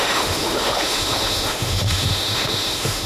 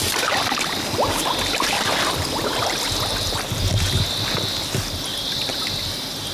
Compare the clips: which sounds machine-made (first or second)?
first